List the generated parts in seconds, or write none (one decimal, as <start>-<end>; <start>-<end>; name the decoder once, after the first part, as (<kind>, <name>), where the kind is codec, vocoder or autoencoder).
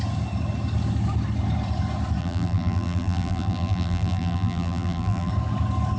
2.2-5.3 (vocoder, BigVGAN v2)